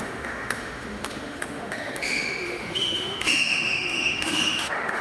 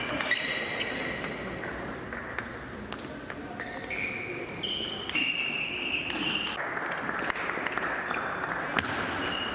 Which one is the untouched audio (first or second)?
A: second